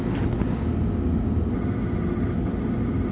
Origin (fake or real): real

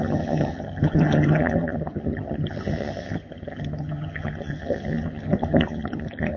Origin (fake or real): fake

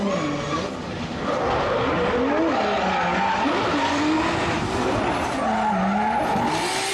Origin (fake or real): real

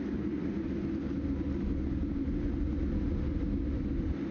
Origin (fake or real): real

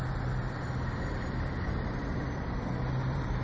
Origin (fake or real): fake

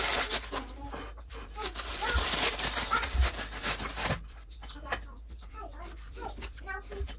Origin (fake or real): fake